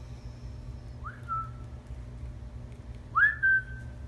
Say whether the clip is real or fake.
real